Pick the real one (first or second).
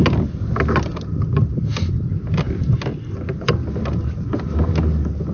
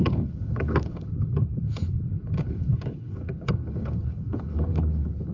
first